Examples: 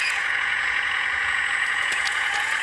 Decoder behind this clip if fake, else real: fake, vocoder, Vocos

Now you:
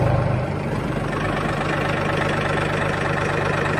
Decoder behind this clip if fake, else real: fake, vocoder, BigVGAN v2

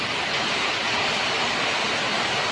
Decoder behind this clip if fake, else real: real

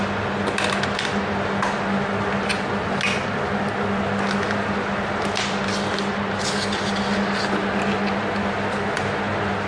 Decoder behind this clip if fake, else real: real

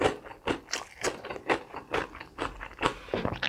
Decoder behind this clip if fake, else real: real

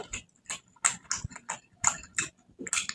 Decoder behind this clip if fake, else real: real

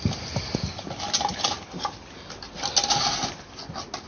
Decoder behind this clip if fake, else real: real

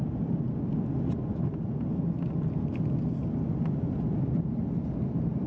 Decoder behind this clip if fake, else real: real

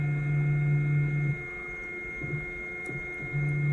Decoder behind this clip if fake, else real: real